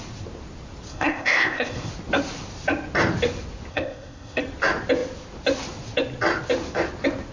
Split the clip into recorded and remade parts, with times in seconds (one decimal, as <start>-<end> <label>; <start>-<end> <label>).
0.0-0.9 recorded; 0.9-1.9 remade; 1.9-3.7 recorded; 3.7-4.4 remade; 4.4-7.3 recorded